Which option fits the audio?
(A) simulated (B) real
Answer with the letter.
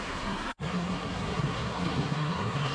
A